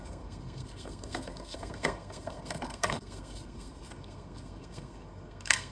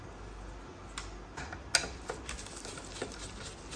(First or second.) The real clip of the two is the second